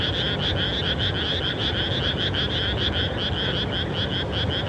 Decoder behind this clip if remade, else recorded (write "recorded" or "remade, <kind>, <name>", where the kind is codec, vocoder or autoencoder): recorded